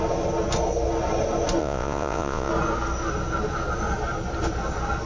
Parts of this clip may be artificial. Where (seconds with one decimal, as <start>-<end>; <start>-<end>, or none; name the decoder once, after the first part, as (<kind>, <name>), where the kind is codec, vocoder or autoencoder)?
1.6-2.5 (vocoder, Vocos)